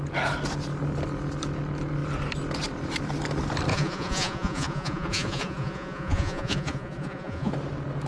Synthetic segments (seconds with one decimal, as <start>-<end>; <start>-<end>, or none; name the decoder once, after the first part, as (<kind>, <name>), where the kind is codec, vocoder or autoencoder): 3.7-7.5 (vocoder, Vocos)